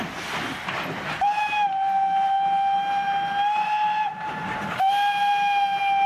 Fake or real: real